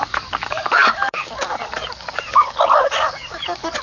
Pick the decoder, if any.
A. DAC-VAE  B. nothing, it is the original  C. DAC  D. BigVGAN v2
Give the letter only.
C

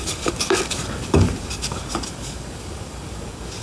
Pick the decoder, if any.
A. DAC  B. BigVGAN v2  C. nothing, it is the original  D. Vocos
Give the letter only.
A